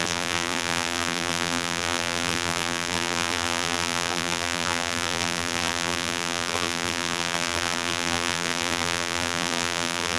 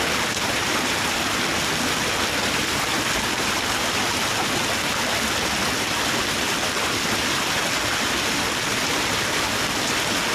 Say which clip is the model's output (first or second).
first